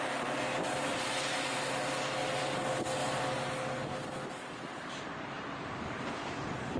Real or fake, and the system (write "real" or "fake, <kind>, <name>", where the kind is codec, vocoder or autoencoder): real